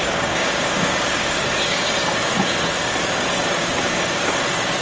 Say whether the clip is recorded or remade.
remade